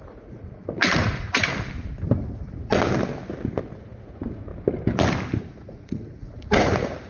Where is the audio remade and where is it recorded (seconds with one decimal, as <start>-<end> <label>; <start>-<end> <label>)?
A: 0.0-1.5 remade; 1.5-3.8 recorded; 3.8-4.5 remade; 4.5-5.4 recorded; 5.4-7.1 remade